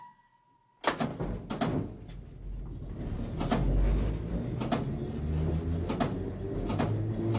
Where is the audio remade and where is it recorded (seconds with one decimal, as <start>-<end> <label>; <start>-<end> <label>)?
0.0-7.4 recorded